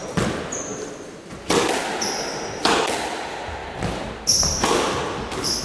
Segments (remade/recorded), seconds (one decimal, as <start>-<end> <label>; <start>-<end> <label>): 0.0-5.6 recorded